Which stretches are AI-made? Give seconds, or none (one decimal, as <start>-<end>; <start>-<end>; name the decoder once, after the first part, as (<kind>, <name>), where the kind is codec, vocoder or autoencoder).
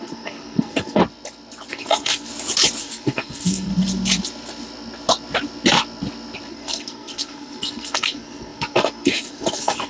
0.0-1.0 (codec, SNAC); 1.7-2.3; 2.8-3.7; 6.5-9.9